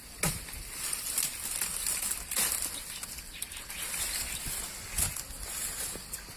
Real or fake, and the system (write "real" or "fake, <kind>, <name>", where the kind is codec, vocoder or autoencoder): real